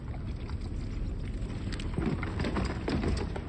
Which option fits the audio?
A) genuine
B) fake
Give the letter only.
A